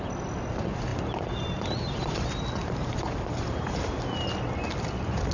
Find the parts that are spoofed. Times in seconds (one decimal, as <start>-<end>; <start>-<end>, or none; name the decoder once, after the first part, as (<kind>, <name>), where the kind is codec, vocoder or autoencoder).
2.6-3.9 (vocoder, BigVGAN v2)